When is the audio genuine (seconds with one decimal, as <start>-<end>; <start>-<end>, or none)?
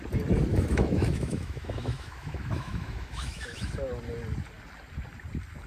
0.0-0.5; 3.9-5.7